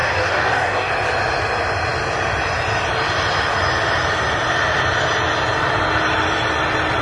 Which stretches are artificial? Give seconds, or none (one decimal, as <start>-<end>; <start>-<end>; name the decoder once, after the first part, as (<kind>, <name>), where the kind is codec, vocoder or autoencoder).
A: 0.0-0.9 (codec, DAC)